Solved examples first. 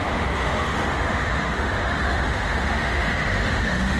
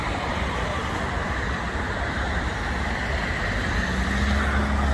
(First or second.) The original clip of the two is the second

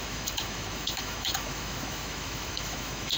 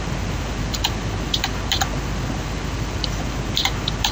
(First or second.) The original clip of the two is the second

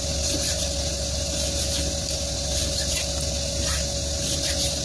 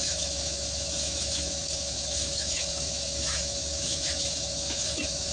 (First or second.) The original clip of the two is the first